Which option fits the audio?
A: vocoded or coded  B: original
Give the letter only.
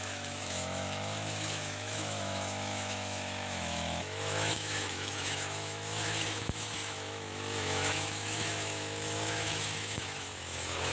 A